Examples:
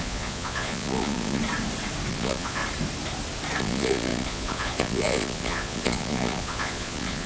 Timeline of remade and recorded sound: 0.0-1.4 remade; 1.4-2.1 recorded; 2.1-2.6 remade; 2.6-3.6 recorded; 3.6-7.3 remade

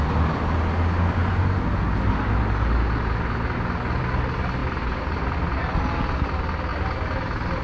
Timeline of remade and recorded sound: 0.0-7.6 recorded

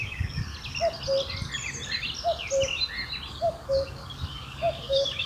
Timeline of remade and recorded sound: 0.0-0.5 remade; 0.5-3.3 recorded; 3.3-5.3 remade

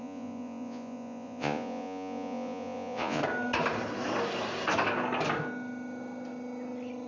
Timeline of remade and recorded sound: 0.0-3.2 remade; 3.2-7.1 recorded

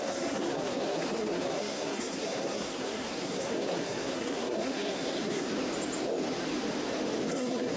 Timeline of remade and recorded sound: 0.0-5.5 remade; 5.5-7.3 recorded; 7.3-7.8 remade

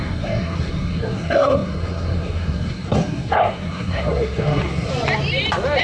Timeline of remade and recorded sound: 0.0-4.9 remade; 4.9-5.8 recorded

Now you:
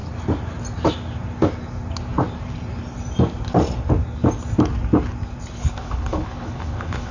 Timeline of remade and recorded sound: 0.0-5.6 recorded; 5.6-7.1 remade